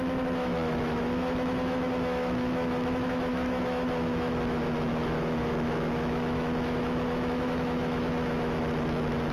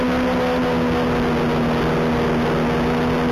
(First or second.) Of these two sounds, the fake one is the first